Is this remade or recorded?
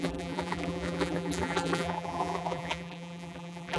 remade